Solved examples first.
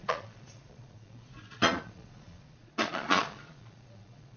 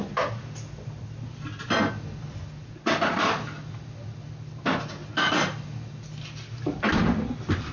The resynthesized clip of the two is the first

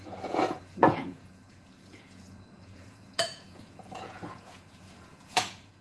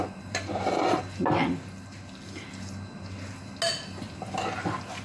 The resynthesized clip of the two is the first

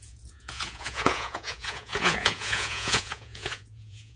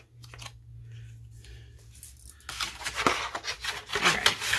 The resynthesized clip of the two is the first